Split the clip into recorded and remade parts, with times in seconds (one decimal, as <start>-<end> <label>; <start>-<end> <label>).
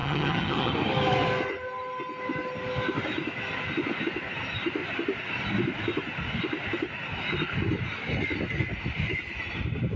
0.0-0.7 remade; 0.7-10.0 recorded